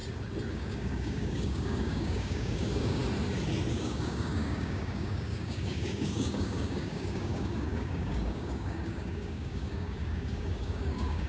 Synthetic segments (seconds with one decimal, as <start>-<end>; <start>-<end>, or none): 0.5-3.0; 3.7-11.3